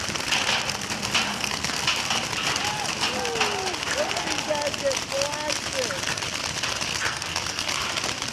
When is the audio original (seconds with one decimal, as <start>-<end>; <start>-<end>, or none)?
0.0-1.3; 1.8-6.9; 7.7-8.3